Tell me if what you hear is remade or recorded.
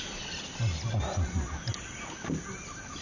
recorded